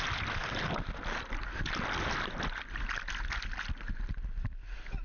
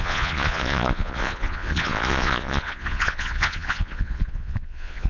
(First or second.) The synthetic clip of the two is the second